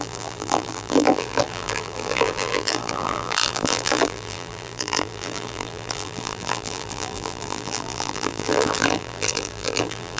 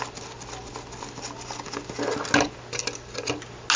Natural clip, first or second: second